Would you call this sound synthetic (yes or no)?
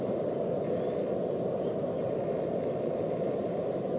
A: no